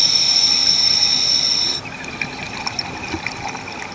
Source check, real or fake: real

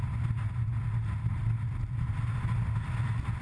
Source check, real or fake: real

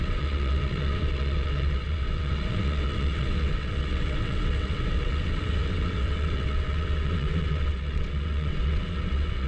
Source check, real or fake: fake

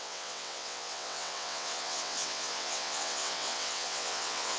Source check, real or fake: fake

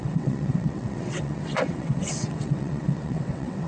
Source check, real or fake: fake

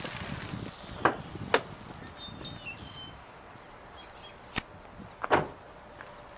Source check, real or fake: real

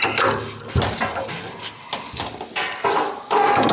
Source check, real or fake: real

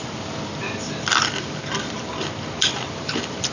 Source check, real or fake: real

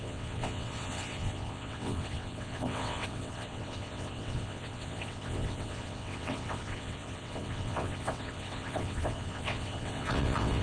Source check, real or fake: fake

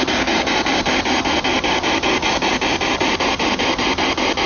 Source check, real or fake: real